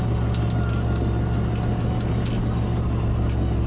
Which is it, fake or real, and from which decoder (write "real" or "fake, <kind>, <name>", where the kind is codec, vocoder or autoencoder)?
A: real